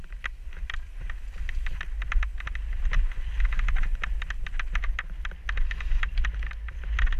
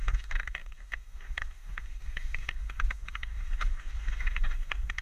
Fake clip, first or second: second